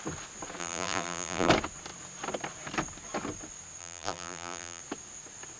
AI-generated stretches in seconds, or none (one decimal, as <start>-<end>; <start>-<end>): 0.6-1.5; 3.8-4.8